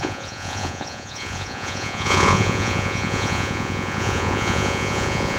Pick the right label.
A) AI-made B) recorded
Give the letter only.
A